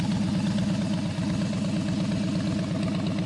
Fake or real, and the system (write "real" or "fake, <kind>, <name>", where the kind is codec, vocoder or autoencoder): real